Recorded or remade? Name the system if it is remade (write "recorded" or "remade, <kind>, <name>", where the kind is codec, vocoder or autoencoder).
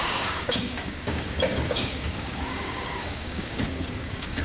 remade, codec, DAC